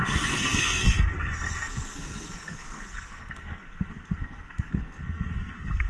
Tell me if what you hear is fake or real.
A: fake